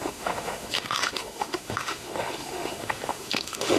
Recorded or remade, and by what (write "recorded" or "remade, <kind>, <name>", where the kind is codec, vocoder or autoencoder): remade, autoencoder, DAC-VAE